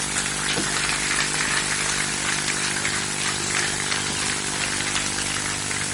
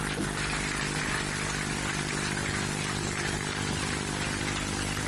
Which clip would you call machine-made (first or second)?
second